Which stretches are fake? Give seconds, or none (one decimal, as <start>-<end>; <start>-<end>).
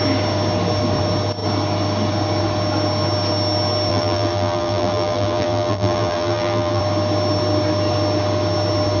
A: 3.9-6.8